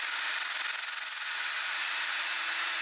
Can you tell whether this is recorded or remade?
recorded